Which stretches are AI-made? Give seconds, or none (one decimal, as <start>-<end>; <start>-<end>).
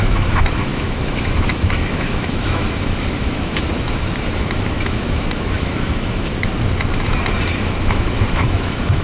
0.0-6.3; 7.6-9.0